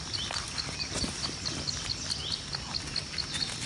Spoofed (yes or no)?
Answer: no